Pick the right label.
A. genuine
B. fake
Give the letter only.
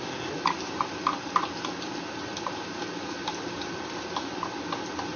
A